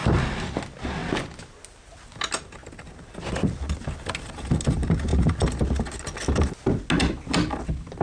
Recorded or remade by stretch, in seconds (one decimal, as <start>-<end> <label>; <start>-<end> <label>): 0.0-0.6 remade; 0.6-8.0 recorded